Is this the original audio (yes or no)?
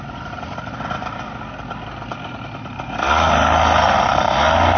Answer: yes